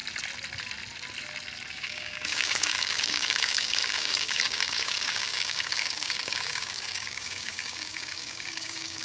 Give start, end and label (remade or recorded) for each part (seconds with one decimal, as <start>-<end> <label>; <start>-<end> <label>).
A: 0.0-1.7 recorded; 1.7-9.0 remade